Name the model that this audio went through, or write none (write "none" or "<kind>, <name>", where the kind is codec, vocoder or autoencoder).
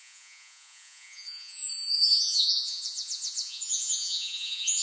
vocoder, Vocos